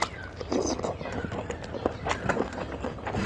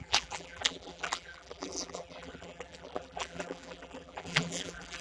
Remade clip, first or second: second